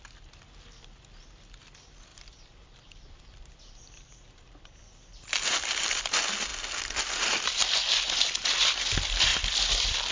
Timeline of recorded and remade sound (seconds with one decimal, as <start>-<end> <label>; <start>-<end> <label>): 0.0-2.1 recorded; 2.1-6.0 remade; 6.0-9.3 recorded; 9.3-10.1 remade